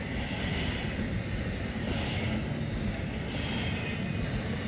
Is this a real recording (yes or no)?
yes